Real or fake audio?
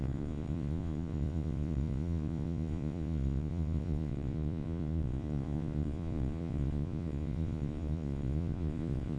fake